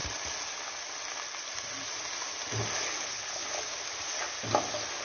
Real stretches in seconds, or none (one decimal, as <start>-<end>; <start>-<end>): 0.0-3.0; 3.4-5.0